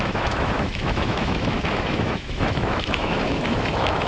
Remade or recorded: remade